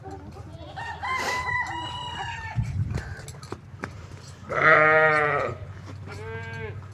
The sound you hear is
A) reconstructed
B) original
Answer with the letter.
B